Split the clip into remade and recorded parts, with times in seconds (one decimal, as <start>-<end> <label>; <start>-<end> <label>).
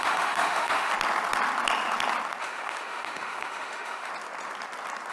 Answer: 0.0-0.9 remade; 0.9-2.4 recorded; 2.4-4.1 remade; 4.1-5.1 recorded